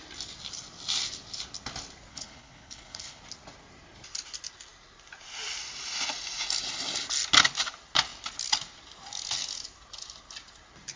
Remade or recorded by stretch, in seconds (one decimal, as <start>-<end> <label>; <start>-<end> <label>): 0.0-2.1 recorded; 2.1-3.2 remade; 3.2-11.0 recorded